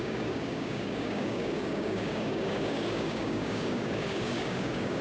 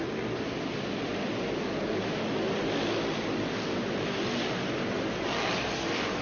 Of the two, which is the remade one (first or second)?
first